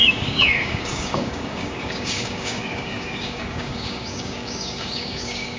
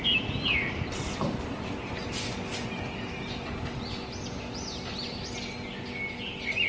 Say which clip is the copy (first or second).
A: first